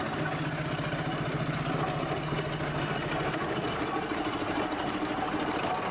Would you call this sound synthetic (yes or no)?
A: no